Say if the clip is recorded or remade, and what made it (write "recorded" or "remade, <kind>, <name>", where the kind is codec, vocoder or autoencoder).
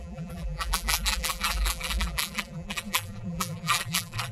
remade, vocoder, BigVGAN v2